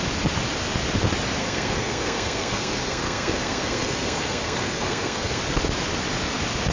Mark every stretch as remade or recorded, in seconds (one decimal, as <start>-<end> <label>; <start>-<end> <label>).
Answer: 0.0-1.4 recorded; 1.4-5.4 remade; 5.4-6.7 recorded